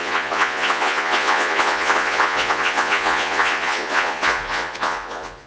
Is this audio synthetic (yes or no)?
yes